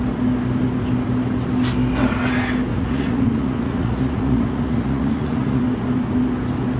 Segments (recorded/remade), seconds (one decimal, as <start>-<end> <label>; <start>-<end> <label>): 0.0-2.7 recorded; 2.7-5.6 remade; 5.6-6.8 recorded